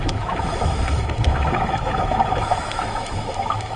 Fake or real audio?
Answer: fake